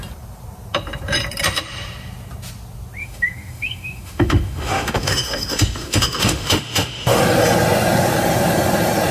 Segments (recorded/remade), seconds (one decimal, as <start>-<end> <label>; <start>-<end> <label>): 0.0-3.0 recorded; 3.0-7.2 remade; 7.2-9.1 recorded